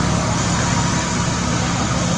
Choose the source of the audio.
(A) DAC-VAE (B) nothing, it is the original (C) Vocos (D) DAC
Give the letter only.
B